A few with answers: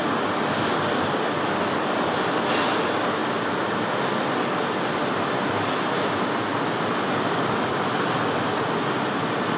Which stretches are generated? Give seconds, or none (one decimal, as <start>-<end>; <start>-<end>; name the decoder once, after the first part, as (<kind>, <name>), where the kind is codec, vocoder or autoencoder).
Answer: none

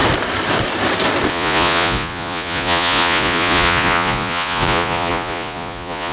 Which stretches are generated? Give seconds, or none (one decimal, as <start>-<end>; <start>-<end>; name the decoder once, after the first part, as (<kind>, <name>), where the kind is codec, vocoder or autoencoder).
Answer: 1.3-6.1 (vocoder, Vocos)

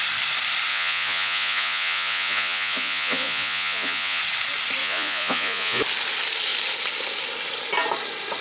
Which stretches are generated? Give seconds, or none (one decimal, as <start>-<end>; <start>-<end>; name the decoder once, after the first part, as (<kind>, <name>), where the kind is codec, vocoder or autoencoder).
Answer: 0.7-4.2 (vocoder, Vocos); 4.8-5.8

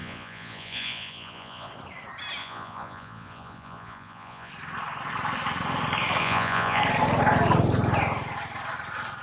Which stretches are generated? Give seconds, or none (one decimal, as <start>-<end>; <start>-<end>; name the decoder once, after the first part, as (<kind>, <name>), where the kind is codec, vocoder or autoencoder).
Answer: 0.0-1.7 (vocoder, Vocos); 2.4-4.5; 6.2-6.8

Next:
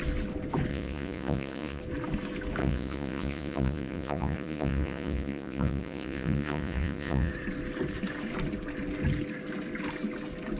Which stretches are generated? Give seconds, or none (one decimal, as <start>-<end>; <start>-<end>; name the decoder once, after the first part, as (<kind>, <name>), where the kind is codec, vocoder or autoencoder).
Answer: 0.7-1.8 (vocoder, Vocos); 2.6-7.3

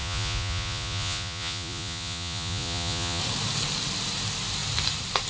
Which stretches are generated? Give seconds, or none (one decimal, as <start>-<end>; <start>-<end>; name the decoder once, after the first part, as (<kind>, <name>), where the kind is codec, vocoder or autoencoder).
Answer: 0.0-3.2 (vocoder, Vocos)

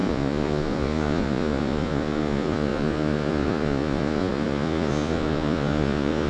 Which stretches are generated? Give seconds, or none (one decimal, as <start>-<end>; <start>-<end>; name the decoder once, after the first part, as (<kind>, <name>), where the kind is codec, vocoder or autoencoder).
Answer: 0.0-6.3 (vocoder, Vocos)